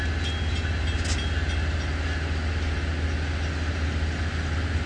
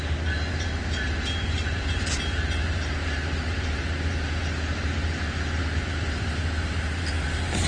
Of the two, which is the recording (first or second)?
first